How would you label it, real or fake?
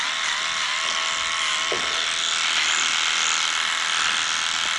real